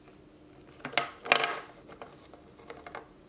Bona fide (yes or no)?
yes